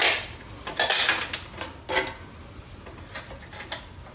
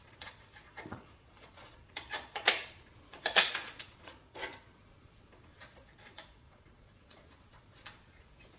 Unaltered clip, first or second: first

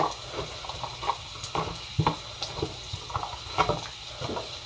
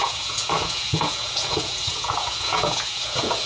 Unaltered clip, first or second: first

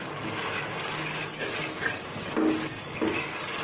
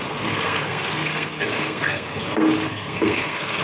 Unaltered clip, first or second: first